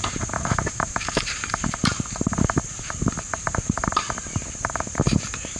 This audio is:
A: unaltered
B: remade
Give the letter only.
B